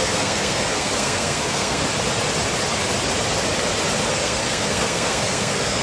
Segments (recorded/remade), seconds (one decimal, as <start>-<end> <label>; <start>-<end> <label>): 0.0-1.8 remade; 1.8-4.1 recorded; 4.1-5.8 remade